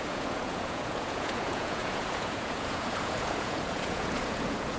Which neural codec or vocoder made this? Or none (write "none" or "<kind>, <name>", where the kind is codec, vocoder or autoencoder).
vocoder, Vocos